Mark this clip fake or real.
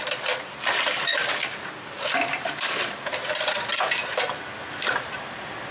real